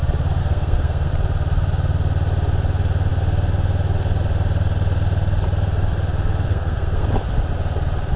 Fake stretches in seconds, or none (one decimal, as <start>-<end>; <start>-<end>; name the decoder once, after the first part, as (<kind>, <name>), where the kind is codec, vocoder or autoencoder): 0.4-1.1 (codec, SNAC); 6.5-7.1